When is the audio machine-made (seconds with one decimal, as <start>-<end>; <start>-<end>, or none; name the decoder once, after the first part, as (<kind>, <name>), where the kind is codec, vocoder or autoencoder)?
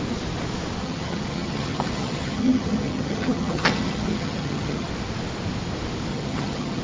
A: 0.8-4.9 (vocoder, HiFi-GAN); 6.1-6.8